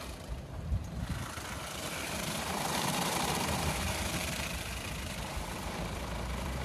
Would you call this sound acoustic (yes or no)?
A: no